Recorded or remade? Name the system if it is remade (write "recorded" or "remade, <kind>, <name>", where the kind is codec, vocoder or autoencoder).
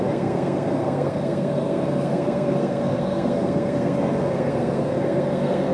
remade, codec, SNAC